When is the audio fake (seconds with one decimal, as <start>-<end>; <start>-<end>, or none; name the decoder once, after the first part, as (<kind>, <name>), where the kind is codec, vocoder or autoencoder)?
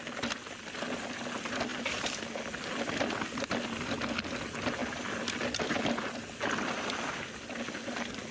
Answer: none